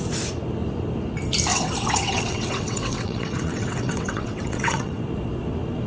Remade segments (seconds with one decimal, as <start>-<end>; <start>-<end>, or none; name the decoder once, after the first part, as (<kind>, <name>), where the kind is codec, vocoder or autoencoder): 1.5-5.0 (vocoder, WaveNeXt)